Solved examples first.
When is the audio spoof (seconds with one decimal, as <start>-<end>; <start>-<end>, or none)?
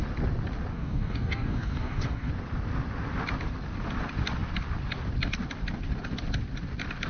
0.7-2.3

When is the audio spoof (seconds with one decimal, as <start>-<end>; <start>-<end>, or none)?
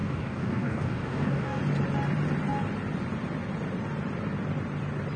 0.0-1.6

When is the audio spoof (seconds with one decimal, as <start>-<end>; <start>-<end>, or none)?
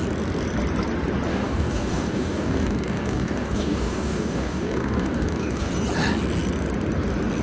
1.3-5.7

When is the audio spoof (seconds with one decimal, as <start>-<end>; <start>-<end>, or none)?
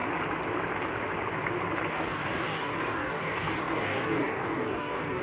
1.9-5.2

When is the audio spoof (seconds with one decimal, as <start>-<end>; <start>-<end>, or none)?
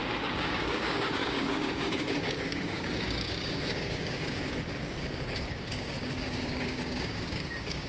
0.0-7.9